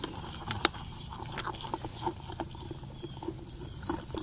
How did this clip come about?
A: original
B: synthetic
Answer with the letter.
A